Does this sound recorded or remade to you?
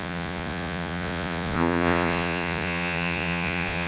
remade